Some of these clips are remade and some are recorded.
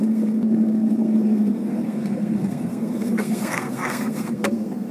remade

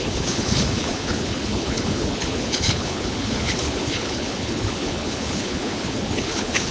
remade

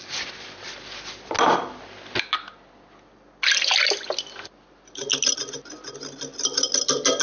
recorded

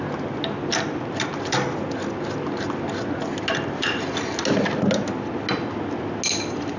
recorded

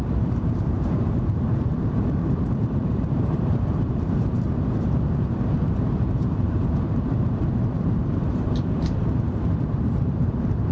remade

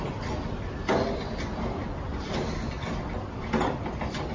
recorded